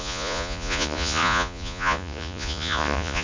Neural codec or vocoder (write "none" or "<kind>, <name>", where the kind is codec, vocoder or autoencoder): vocoder, Vocos